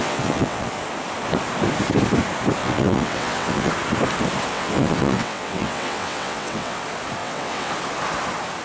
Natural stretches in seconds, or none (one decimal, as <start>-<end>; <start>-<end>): 0.7-2.6; 3.7-4.5; 6.8-7.2; 7.7-8.6